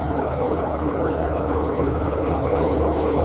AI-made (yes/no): yes